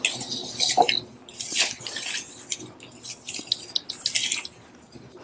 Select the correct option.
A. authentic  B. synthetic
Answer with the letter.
A